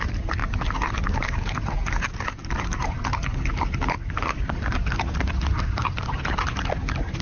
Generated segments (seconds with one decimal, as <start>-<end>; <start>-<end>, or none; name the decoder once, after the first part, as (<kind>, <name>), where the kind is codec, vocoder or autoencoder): 0.0-7.2 (vocoder, BigVGAN v2)